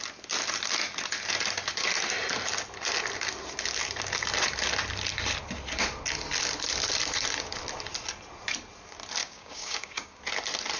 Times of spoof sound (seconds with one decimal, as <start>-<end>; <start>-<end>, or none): 9.2-10.2